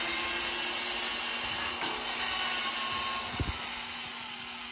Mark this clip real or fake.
real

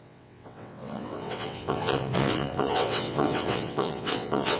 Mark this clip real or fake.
fake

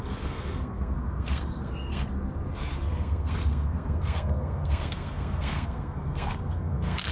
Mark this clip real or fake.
fake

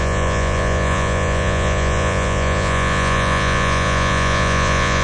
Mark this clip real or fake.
fake